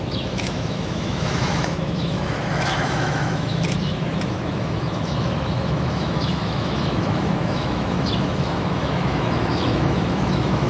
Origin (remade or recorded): remade